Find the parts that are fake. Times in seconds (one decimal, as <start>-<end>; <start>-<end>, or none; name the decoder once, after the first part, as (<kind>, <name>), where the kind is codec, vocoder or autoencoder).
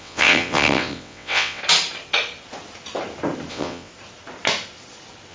0.0-1.6 (vocoder, WaveNeXt); 3.5-3.9